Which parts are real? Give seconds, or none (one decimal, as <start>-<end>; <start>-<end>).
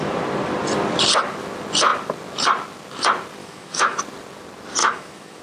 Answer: 0.0-3.4; 4.0-4.8